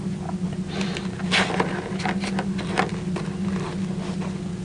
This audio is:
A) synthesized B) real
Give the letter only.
B